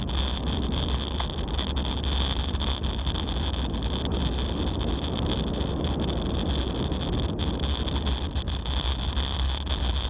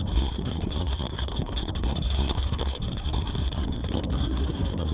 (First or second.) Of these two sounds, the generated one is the second